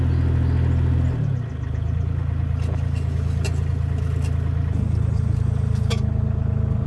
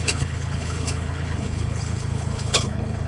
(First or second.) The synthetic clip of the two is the second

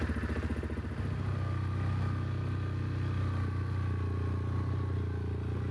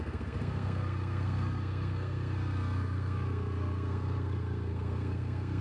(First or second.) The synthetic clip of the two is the second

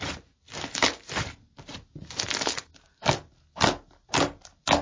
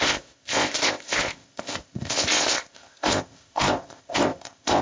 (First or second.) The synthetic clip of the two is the second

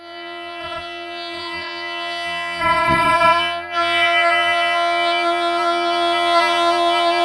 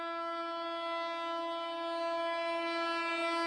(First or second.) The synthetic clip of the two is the first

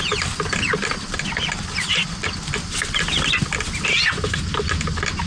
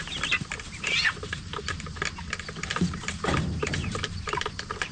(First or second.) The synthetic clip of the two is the second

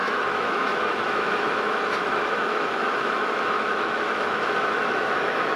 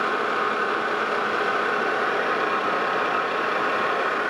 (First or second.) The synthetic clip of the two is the first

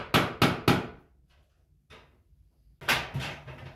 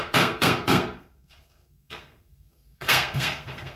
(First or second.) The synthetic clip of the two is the second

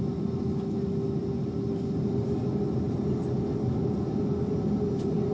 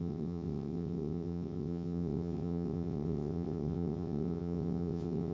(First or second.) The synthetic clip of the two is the second